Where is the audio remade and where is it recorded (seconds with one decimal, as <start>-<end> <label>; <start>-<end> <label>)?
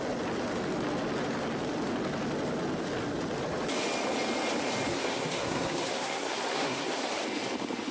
0.0-4.9 recorded; 4.9-7.1 remade; 7.1-7.9 recorded